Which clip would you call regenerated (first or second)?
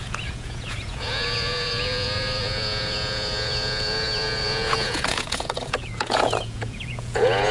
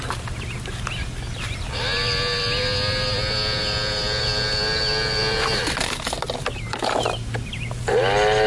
first